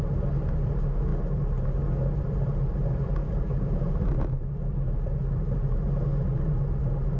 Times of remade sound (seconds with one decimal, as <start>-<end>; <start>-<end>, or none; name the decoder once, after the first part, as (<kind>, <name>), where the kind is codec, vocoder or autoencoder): 3.2-4.1 (vocoder, BigVGAN v2)